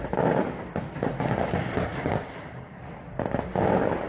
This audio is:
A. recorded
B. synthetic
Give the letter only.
A